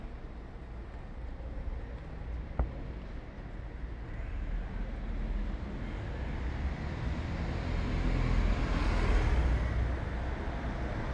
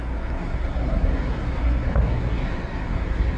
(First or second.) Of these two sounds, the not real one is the second